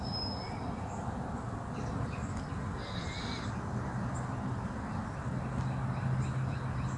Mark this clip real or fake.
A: real